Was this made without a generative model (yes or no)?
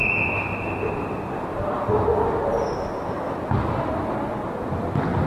yes